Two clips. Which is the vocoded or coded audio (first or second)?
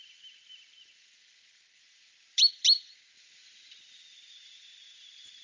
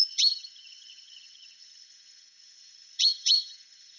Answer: second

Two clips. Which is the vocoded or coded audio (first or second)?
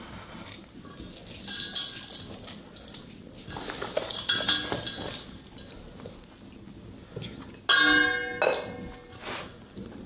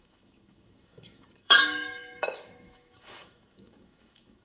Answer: second